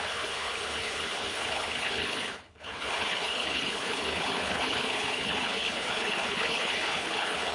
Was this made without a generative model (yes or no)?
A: no